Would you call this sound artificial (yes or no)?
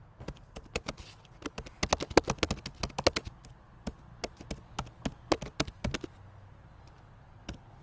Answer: no